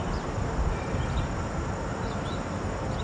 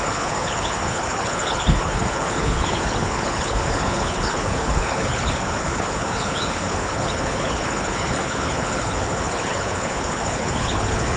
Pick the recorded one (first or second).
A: first